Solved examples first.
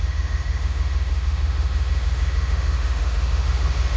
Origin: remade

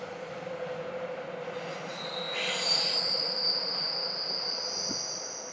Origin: recorded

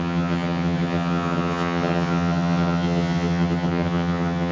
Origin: remade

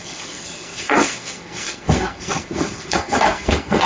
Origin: remade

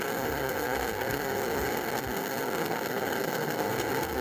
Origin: remade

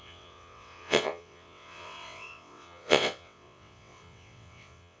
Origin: remade